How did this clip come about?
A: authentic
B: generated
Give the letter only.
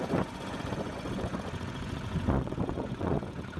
B